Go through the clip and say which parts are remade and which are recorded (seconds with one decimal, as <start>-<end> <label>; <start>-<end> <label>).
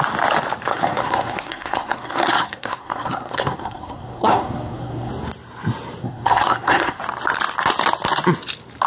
0.0-0.7 recorded; 0.7-5.1 remade; 5.1-6.0 recorded; 6.0-7.0 remade; 7.0-8.9 recorded